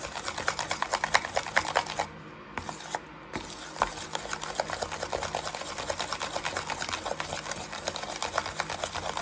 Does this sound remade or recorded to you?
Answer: recorded